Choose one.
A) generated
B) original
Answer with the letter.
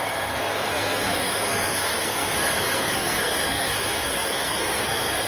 A